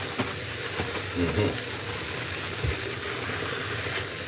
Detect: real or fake real